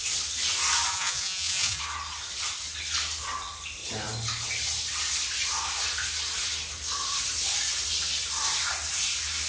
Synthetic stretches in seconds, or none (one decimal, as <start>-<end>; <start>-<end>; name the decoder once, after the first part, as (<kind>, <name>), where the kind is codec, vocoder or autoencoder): 0.9-1.8 (vocoder, Vocos)